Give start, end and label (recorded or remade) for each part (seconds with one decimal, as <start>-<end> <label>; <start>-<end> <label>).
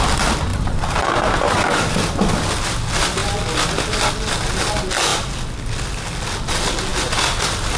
0.0-0.5 recorded; 0.5-1.5 remade; 1.5-7.8 recorded